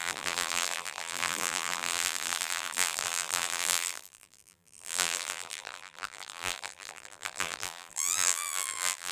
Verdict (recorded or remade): remade